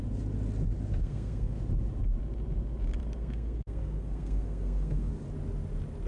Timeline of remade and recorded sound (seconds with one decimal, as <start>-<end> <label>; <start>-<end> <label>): 0.0-1.0 recorded; 1.0-1.6 remade; 1.6-3.0 recorded; 3.0-5.1 remade; 5.1-6.1 recorded